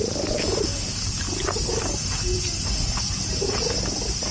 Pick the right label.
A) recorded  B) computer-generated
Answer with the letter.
A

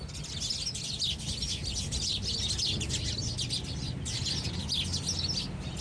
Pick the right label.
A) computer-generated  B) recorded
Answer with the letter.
B